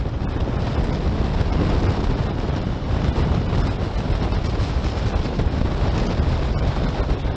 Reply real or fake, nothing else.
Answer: real